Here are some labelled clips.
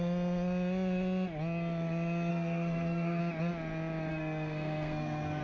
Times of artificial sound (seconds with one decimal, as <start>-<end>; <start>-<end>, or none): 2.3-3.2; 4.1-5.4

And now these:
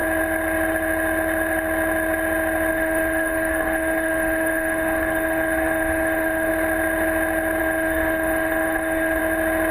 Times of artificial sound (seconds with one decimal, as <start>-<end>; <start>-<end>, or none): 2.7-6.5; 7.6-9.2

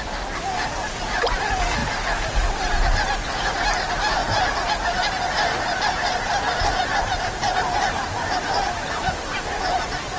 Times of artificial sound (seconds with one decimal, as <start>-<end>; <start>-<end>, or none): 0.0-1.8; 3.3-4.2; 8.5-10.2

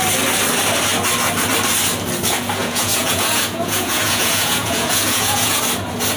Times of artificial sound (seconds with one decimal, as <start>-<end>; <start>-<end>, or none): 2.6-5.6

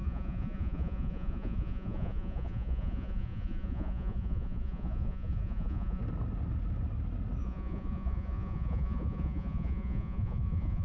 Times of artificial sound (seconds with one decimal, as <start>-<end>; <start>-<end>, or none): 0.0-6.0; 7.4-10.8

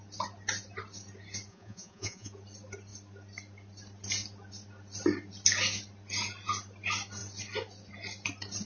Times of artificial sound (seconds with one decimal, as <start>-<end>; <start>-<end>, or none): 1.5-2.3

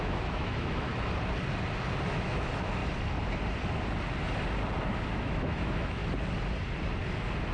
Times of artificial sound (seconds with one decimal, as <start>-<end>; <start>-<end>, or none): 0.0-0.9; 2.1-2.8; 5.2-6.0

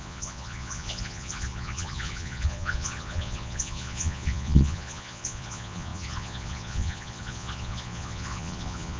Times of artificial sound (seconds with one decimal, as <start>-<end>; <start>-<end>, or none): 0.0-9.0